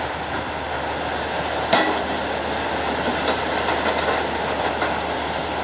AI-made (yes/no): no